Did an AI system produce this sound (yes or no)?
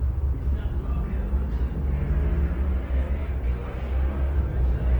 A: no